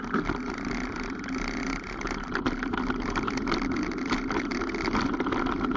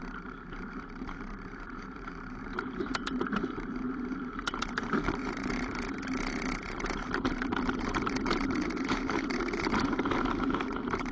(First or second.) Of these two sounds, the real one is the first